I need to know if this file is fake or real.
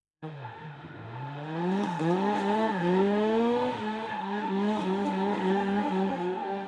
fake